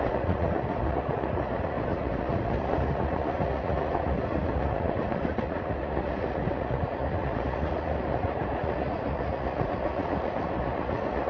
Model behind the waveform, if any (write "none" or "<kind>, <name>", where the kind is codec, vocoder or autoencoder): vocoder, Vocos